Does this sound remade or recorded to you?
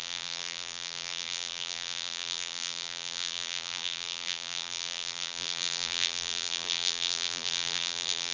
remade